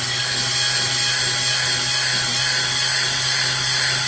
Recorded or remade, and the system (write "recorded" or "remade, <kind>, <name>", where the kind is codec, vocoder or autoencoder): recorded